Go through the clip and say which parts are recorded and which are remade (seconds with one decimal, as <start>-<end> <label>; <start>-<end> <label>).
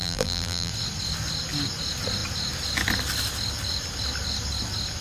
0.0-0.7 remade; 0.7-5.0 recorded